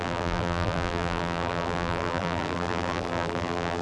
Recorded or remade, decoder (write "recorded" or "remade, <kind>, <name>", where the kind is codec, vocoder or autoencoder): remade, vocoder, BigVGAN v2